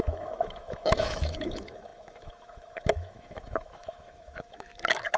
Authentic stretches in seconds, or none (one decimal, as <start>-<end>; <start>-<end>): none